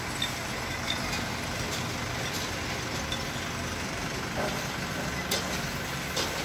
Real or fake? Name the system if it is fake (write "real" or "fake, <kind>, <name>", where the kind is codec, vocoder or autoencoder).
real